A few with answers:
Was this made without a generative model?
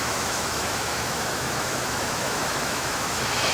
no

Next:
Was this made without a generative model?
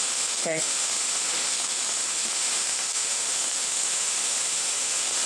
no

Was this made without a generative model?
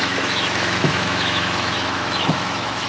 no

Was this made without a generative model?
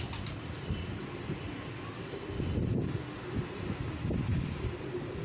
yes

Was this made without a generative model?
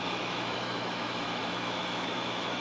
no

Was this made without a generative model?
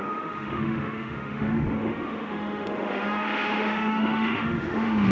no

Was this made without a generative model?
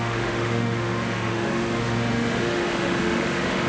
no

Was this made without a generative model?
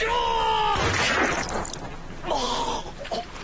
yes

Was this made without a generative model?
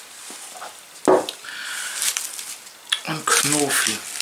yes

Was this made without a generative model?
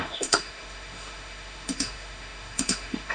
no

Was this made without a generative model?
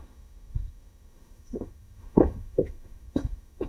no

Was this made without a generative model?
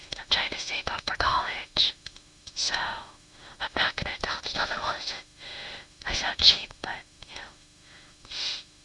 no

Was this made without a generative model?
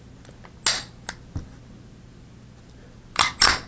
yes